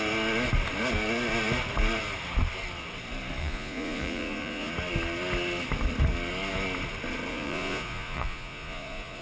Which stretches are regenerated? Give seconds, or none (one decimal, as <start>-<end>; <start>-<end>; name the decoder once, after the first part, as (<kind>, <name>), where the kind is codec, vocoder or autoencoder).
3.4-4.7 (vocoder, Vocos); 7.3-9.2